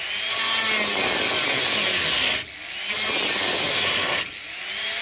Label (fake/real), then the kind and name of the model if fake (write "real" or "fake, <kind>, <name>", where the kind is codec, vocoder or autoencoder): real